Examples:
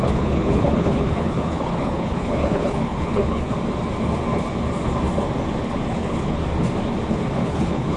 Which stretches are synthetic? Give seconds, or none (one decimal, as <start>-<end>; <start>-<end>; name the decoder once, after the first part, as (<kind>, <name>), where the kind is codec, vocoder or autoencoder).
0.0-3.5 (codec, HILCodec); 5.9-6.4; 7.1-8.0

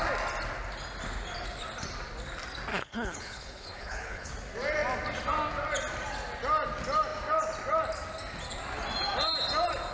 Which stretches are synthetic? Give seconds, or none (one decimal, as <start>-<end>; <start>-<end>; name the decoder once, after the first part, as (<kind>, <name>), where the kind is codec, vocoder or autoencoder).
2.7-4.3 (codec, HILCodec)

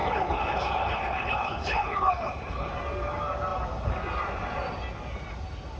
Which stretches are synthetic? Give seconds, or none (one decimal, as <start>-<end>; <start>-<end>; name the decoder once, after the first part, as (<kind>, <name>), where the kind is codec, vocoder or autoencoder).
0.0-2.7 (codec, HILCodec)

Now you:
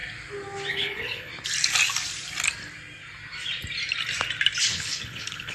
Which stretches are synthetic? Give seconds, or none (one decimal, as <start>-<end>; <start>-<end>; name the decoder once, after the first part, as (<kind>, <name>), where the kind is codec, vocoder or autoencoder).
0.7-1.3 (codec, HILCodec); 4.6-5.5